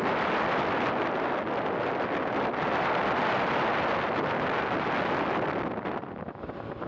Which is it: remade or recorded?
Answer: recorded